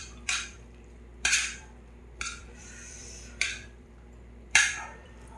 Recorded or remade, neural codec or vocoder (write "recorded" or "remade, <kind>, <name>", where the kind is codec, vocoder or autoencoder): remade, vocoder, BigVGAN v2